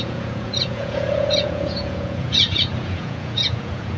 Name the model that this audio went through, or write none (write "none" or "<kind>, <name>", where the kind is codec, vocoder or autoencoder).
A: vocoder, Vocos